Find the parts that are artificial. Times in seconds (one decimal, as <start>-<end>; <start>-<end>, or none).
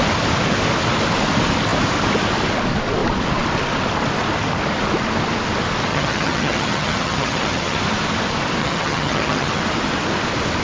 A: 5.9-7.8; 8.6-9.6